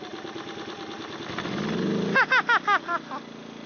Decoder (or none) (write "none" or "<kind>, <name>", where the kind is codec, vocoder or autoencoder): none